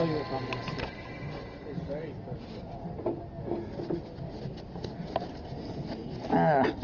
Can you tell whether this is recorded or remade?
recorded